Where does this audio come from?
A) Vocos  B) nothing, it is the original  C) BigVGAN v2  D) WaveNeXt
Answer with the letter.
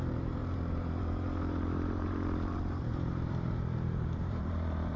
C